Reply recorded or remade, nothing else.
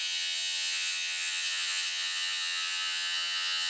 remade